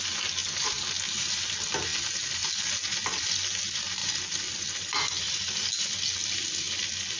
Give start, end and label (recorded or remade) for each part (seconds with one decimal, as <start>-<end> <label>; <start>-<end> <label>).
0.0-7.2 recorded